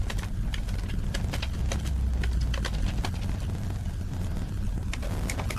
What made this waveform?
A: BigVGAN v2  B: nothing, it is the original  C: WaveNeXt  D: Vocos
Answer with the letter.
B